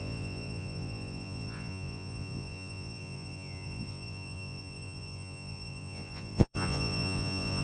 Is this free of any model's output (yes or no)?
no